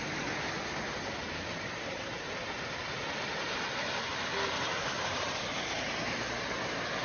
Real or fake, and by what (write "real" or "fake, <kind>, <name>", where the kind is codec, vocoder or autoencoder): real